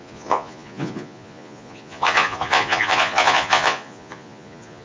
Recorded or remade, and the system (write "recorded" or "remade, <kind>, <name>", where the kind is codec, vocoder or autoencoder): remade, vocoder, Vocos